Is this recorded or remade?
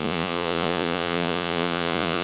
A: remade